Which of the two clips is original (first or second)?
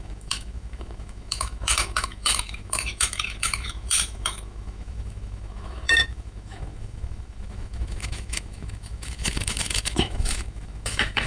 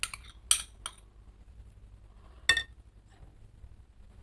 second